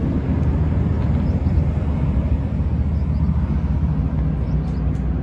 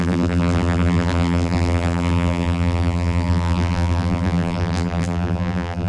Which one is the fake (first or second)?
second